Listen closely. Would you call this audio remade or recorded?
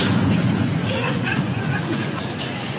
remade